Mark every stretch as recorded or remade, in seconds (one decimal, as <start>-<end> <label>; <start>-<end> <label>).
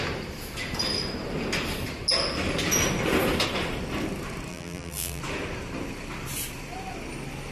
0.0-4.5 recorded; 4.5-5.2 remade; 5.2-7.5 recorded